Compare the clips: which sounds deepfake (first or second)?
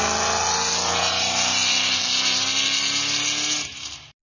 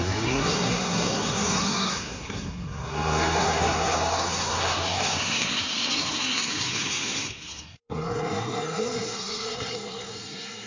second